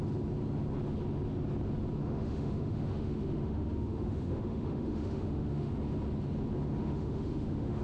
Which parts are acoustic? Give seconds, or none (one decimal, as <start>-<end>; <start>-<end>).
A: 0.0-2.0; 5.7-6.8